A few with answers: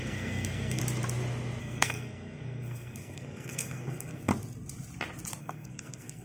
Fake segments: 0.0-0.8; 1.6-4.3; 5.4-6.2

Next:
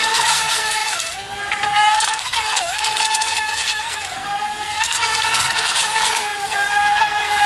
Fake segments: 0.0-7.5